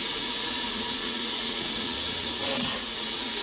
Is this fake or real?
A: fake